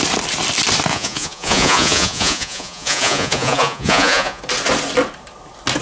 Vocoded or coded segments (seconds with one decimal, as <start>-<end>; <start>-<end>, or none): 0.9-4.4